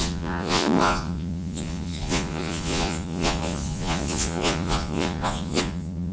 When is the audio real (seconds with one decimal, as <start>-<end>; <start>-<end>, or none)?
none